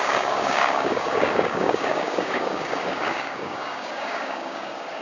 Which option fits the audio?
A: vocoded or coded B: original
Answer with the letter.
A